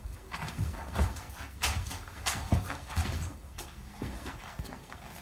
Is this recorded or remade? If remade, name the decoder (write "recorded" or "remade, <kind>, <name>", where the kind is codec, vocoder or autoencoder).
remade, codec, SNAC